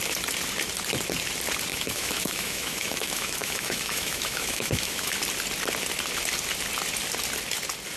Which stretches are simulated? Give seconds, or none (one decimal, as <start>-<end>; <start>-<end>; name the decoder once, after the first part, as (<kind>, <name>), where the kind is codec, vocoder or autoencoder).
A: 1.7-5.2 (autoencoder, DAC-VAE)